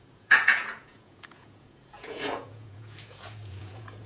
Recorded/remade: remade